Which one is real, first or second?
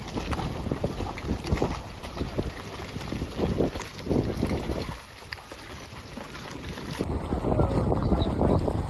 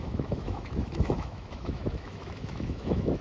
first